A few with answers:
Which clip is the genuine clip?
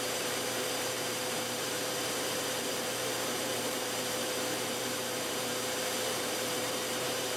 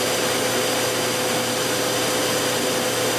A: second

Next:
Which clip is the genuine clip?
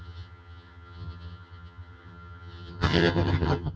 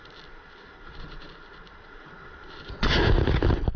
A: second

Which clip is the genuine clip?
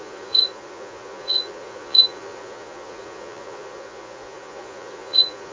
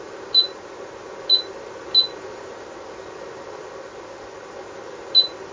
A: second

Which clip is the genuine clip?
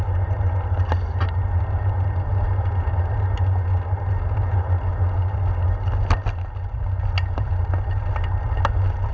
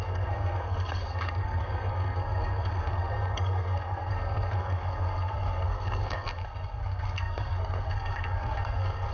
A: first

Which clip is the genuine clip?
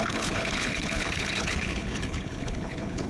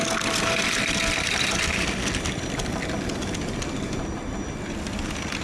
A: second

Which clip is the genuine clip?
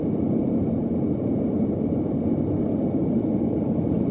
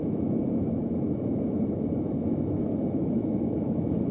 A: first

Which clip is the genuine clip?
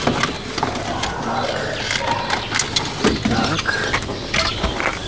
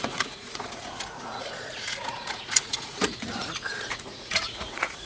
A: first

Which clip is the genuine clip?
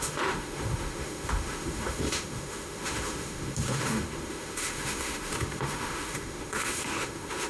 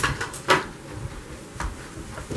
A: second